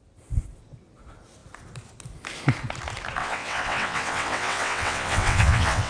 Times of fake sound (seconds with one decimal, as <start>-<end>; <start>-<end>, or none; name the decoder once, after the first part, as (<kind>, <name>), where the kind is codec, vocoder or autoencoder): 3.2-5.9 (vocoder, WaveNeXt)